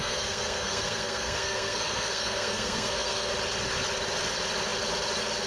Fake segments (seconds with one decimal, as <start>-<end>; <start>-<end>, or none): 0.0-3.3